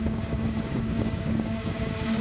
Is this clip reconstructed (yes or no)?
yes